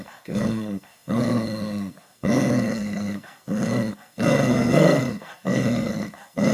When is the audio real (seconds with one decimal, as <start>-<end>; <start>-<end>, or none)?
none